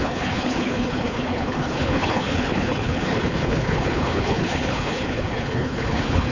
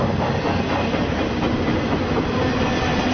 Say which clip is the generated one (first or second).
first